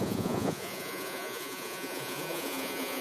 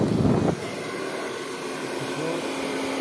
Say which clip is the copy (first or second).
first